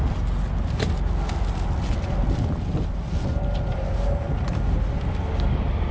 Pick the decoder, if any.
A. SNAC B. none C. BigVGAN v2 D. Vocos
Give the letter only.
B